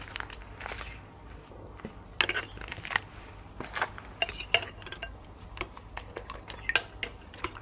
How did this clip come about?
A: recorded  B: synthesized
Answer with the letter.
A